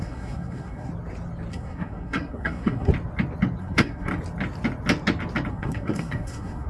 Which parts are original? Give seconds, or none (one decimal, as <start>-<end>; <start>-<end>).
0.9-1.5; 2.9-3.6; 4.1-5.5